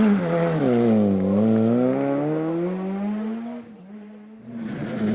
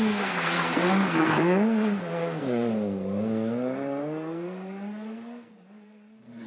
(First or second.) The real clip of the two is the first